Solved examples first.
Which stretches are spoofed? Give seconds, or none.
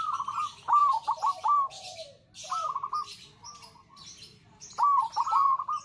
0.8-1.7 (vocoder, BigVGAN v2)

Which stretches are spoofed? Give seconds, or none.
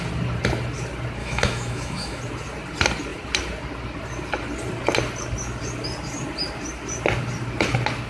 1.2-2.2 (autoencoder, DAC-VAE)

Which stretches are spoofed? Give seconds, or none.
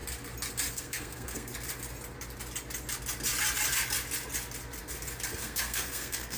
0.7-1.5 (codec, SNAC); 5.3-6.4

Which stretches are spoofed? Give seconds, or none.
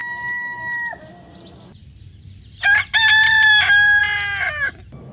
none